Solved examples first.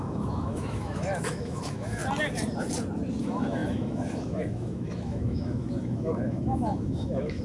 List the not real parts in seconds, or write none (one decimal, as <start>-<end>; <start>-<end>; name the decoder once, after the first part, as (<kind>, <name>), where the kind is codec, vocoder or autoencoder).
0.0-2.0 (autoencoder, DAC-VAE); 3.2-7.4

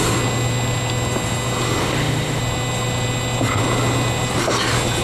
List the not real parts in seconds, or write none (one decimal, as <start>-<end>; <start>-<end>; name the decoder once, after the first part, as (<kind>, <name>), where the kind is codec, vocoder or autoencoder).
1.8-2.4 (autoencoder, DAC-VAE)

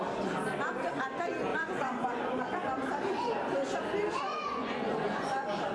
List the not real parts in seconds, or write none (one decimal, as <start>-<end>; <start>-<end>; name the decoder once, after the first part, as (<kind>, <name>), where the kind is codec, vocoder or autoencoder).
1.5-2.4 (vocoder, Vocos); 4.3-5.3